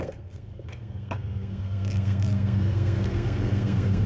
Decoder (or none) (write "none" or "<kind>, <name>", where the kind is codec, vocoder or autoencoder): codec, SNAC